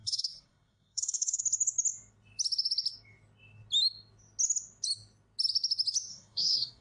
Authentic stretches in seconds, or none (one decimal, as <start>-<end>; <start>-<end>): 1.4-6.1